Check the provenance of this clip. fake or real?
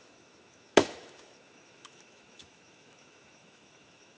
fake